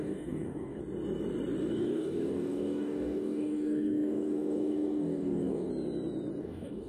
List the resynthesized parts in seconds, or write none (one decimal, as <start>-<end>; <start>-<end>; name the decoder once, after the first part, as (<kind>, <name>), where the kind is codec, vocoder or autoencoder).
0.0-0.8 (codec, DAC); 1.7-5.7; 6.4-6.9